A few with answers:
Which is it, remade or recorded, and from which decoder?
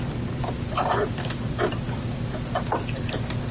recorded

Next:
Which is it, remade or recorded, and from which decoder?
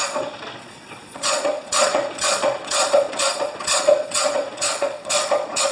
remade, vocoder, Vocos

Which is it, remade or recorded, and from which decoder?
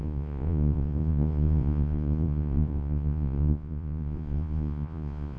remade, vocoder, Vocos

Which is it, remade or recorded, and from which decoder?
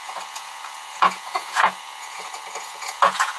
remade, vocoder, Vocos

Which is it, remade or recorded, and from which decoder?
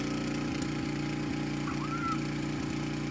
recorded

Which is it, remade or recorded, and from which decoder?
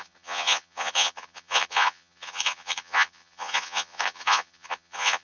remade, vocoder, Vocos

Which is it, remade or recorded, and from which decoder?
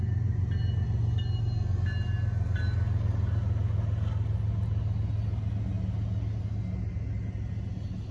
recorded